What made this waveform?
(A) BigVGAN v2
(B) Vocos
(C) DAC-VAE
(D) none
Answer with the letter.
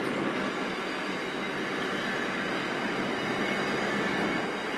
D